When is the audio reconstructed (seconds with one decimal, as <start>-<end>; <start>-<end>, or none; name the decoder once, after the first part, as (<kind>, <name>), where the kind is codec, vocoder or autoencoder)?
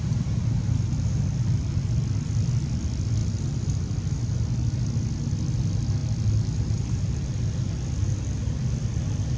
none